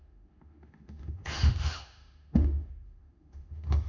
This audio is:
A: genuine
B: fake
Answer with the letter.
B